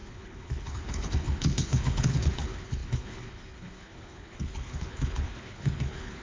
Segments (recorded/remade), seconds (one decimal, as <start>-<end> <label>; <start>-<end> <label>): 0.0-6.2 remade